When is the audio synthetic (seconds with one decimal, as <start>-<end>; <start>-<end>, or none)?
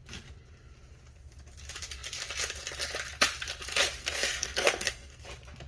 4.0-5.2